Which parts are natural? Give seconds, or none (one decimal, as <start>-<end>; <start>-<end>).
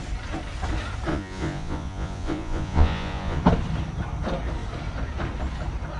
0.0-1.1; 3.4-6.0